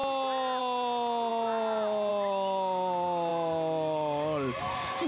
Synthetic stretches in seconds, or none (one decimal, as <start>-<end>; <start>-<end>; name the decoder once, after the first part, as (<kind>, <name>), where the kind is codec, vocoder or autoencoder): none